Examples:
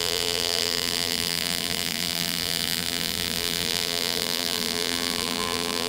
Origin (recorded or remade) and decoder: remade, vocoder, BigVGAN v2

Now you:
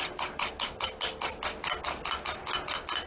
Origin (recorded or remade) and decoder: recorded